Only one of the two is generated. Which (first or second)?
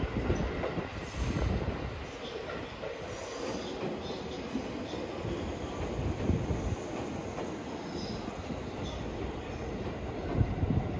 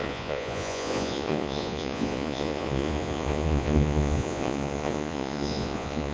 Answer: second